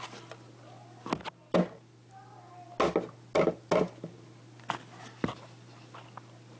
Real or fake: real